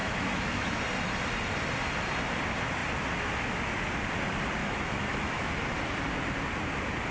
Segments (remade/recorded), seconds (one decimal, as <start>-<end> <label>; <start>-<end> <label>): 0.0-0.8 remade; 0.8-4.6 recorded; 4.6-5.5 remade; 5.5-7.1 recorded